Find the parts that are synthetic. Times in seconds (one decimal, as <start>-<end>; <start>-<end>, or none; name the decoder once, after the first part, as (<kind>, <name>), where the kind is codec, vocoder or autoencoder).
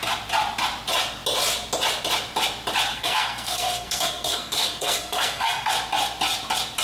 2.9-5.7 (codec, SNAC)